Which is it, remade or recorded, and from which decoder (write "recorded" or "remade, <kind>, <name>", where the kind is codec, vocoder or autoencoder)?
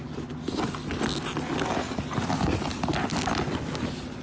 recorded